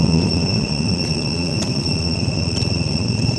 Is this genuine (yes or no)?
no